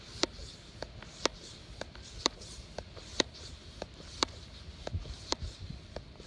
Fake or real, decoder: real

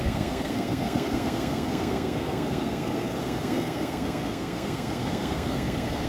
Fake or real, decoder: fake, codec, SNAC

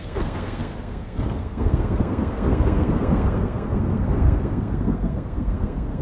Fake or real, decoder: fake, codec, SNAC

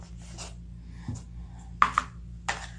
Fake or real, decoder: real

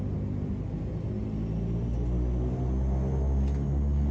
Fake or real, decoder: real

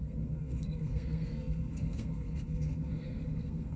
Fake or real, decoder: fake, codec, SNAC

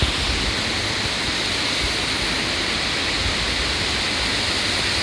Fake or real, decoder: real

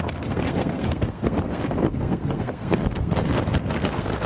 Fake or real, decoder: fake, codec, SNAC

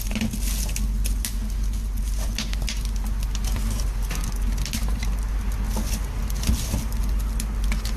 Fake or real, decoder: real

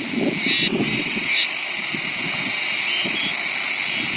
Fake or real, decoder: real